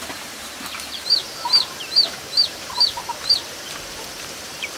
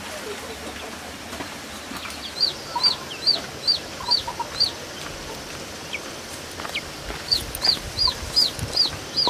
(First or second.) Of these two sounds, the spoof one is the first